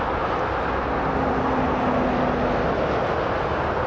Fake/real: real